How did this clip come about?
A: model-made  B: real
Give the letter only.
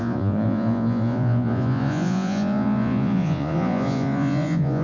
A